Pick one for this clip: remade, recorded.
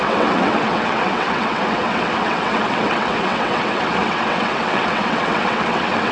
remade